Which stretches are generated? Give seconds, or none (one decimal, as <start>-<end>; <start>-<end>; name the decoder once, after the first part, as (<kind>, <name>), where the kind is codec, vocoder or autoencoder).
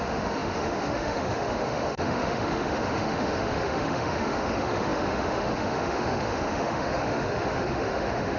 0.0-8.4 (autoencoder, DAC-VAE)